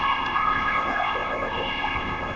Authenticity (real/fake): fake